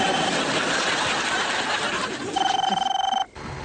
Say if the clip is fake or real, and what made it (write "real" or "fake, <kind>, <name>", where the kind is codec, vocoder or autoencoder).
real